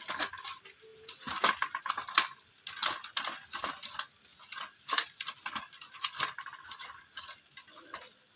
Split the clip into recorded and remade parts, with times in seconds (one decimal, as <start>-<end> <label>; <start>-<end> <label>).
0.0-8.4 recorded